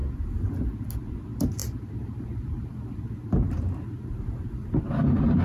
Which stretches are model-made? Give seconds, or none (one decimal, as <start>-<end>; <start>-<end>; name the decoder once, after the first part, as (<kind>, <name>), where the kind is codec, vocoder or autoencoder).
0.0-0.5 (vocoder, BigVGAN v2); 1.6-4.8